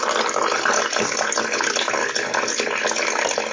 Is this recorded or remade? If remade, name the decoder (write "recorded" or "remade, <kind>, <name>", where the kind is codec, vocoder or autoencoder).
recorded